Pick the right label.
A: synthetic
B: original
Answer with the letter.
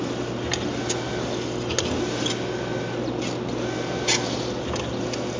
B